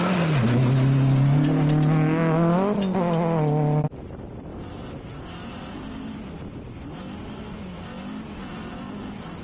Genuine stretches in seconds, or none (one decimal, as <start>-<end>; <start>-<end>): 0.0-9.4

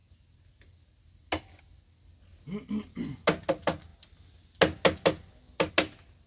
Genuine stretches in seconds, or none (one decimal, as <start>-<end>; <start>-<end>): 0.0-6.3

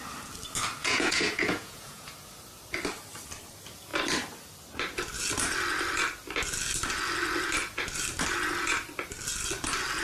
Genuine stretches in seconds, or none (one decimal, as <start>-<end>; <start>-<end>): 0.0-0.8; 2.1-10.0

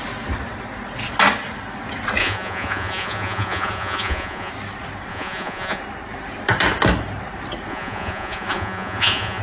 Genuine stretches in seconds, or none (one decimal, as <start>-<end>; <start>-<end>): 0.0-2.2; 4.5-5.1; 5.8-7.7

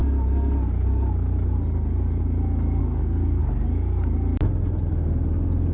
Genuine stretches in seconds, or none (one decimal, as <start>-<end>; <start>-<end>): 0.0-2.8; 3.4-5.7